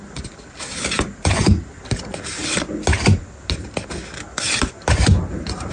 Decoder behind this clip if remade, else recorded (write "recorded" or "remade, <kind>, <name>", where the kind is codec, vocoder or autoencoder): recorded